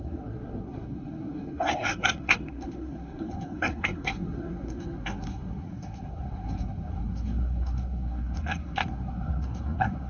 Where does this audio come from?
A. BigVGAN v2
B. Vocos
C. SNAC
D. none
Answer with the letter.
C